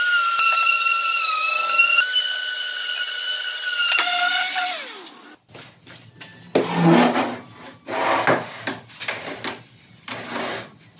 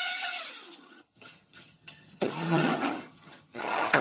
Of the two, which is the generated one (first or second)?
second